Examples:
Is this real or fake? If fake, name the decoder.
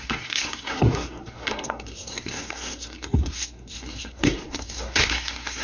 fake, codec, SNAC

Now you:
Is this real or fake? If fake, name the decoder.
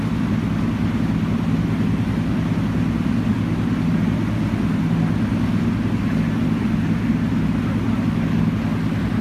real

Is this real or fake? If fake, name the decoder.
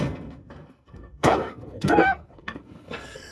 fake, codec, SNAC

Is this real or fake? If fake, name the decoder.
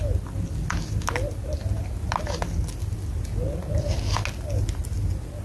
real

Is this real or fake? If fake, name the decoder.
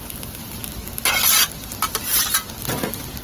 real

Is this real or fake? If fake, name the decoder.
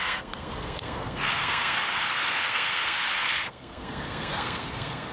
fake, codec, SNAC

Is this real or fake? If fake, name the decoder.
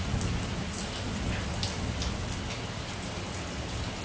real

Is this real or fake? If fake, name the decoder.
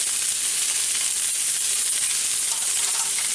real